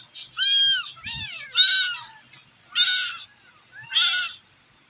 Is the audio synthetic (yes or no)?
no